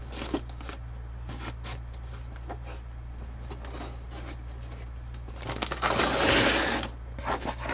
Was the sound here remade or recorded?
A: recorded